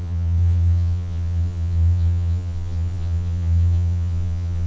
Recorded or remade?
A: remade